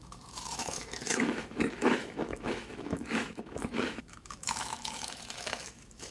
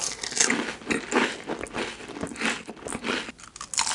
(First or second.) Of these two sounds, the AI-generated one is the first